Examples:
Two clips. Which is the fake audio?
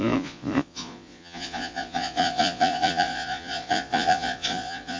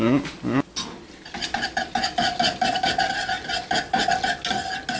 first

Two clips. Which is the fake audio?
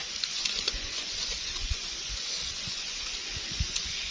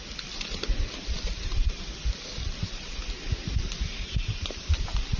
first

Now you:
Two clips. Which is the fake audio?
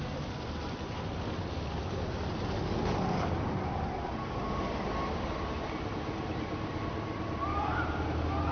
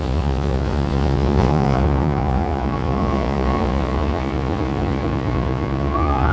second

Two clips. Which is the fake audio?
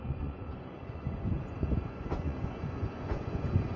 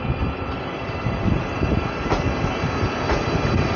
first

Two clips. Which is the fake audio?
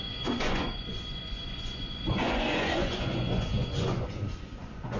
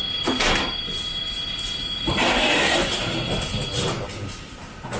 first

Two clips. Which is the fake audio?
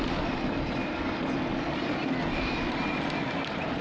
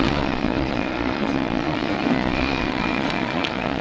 second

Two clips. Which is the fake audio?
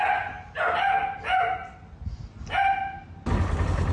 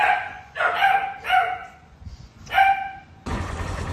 second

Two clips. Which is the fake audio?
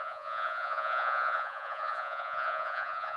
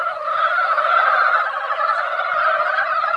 first